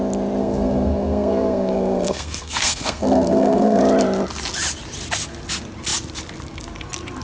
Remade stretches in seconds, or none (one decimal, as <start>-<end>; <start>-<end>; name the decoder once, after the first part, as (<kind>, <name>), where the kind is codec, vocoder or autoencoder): 0.4-3.8 (codec, SNAC)